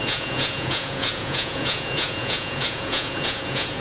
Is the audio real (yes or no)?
no